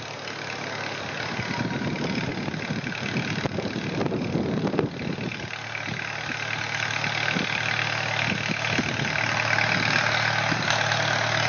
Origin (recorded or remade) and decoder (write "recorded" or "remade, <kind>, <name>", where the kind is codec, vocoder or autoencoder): recorded